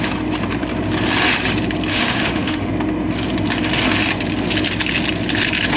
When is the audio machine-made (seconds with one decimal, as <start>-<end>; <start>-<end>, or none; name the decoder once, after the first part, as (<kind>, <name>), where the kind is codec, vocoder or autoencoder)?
1.9-2.7 (autoencoder, DAC-VAE)